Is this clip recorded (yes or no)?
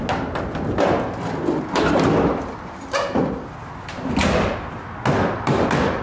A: yes